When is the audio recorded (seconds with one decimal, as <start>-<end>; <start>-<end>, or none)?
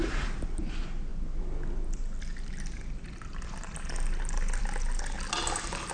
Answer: 0.0-5.9